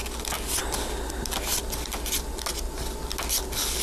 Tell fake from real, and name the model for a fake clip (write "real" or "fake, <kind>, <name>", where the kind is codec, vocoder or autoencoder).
real